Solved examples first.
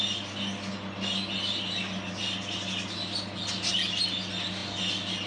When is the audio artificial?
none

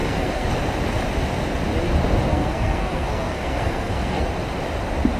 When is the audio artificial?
0.0-0.5 (codec, SNAC); 2.3-4.3